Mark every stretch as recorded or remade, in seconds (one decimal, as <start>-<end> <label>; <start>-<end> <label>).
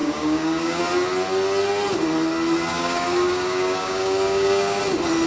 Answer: 0.0-0.8 remade; 0.8-2.7 recorded; 2.7-4.8 remade; 4.8-5.3 recorded